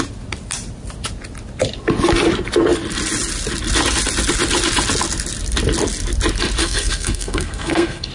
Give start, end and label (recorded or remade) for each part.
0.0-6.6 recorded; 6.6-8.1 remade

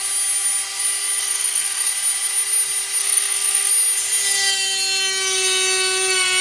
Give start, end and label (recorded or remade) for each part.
0.0-1.2 recorded; 1.2-1.9 remade; 1.9-3.0 recorded; 3.0-3.7 remade; 3.7-6.4 recorded

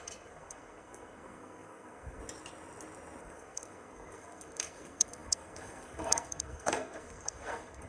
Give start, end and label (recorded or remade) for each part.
0.0-2.2 remade; 2.2-3.2 recorded; 3.2-7.9 remade

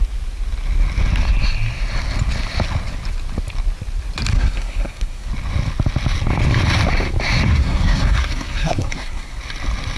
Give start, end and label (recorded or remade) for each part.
0.0-4.3 recorded; 4.3-5.3 remade; 5.3-7.5 recorded; 7.5-9.4 remade; 9.4-10.0 recorded

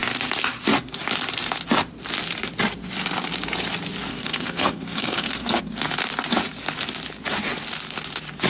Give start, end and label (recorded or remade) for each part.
0.0-4.1 recorded; 4.1-5.6 remade; 5.6-8.5 recorded

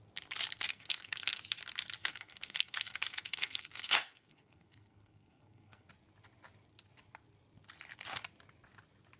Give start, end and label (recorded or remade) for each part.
0.0-0.7 recorded; 0.7-1.4 remade; 1.4-2.0 recorded; 2.0-5.9 remade; 5.9-9.2 recorded

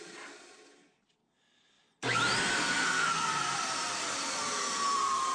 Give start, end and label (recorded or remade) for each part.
0.0-2.6 recorded; 2.6-3.3 remade; 3.3-5.3 recorded

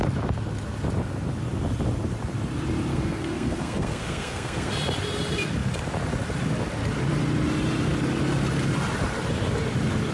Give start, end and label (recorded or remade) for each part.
0.0-2.9 recorded; 2.9-4.7 remade; 4.7-10.1 recorded